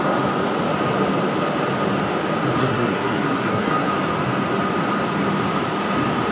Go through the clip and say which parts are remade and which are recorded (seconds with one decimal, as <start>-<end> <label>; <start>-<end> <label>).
0.0-2.6 recorded; 2.6-3.9 remade; 3.9-6.3 recorded